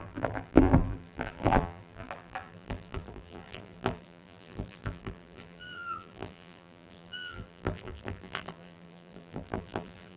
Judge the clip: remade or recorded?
remade